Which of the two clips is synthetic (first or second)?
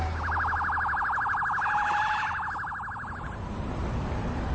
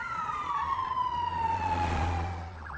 second